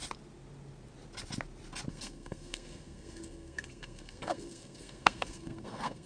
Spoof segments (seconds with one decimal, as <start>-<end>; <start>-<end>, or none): 1.9-6.1